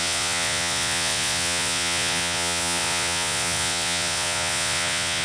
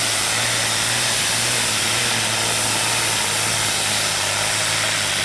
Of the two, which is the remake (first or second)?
first